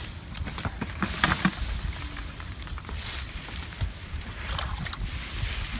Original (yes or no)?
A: no